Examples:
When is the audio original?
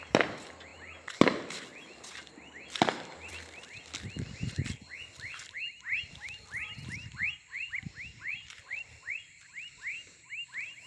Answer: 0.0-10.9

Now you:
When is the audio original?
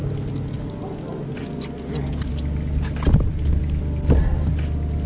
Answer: 0.0-5.1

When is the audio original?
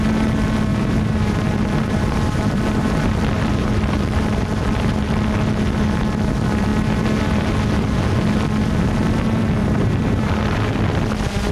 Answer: 0.0-0.7; 5.1-9.6; 10.3-11.5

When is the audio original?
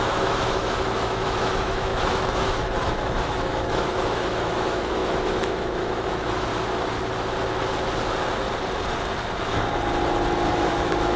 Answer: 6.5-10.5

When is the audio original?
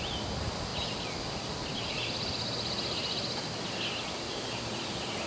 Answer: 0.0-5.3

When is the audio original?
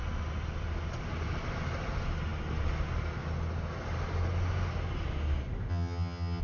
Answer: 0.0-5.7